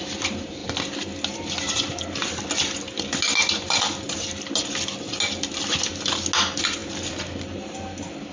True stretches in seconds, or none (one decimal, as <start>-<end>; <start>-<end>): 0.0-8.3